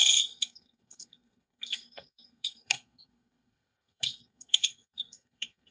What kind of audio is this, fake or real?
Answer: fake